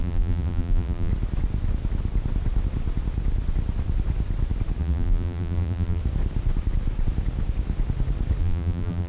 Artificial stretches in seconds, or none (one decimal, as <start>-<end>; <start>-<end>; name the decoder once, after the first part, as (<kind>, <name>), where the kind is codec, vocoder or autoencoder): 0.0-1.1 (vocoder, BigVGAN v2); 4.8-6.0; 8.4-9.1